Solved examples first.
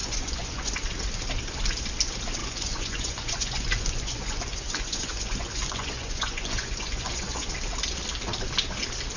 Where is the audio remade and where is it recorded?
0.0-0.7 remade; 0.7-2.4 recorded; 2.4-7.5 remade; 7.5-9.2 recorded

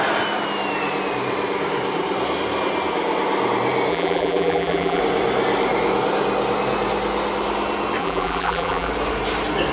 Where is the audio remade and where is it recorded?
0.0-3.9 recorded; 3.9-5.0 remade; 5.0-8.0 recorded; 8.0-8.9 remade; 8.9-9.7 recorded

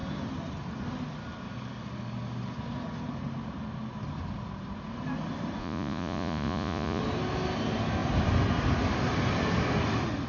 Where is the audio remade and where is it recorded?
0.0-5.6 recorded; 5.6-7.0 remade; 7.0-10.3 recorded

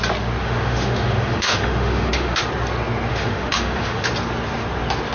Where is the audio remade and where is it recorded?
0.0-0.4 recorded; 0.4-2.4 remade; 2.4-3.1 recorded; 3.1-4.1 remade; 4.1-5.1 recorded

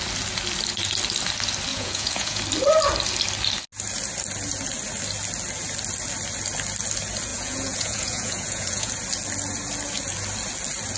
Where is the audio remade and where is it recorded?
0.0-1.7 recorded; 1.7-2.4 remade; 2.4-7.3 recorded; 7.3-8.9 remade; 8.9-11.0 recorded